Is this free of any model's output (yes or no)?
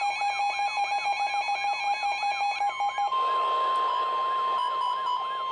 yes